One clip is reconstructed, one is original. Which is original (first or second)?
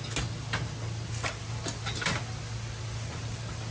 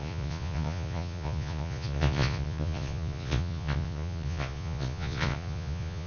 first